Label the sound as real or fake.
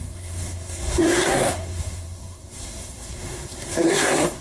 fake